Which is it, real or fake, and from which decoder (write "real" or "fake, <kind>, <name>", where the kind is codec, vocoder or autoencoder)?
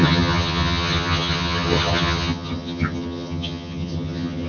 fake, vocoder, HiFi-GAN